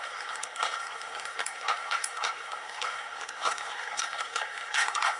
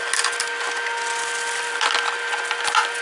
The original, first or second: second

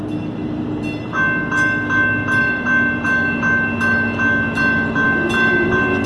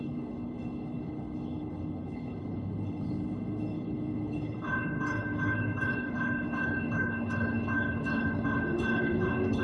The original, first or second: first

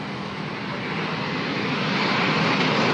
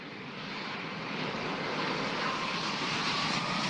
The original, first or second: first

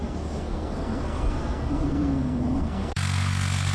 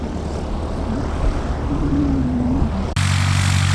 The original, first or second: second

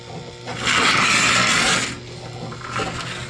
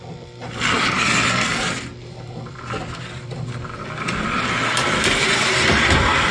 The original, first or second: first